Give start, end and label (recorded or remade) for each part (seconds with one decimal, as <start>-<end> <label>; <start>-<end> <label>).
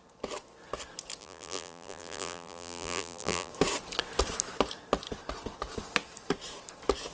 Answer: 0.0-1.2 recorded; 1.2-3.5 remade; 3.5-7.1 recorded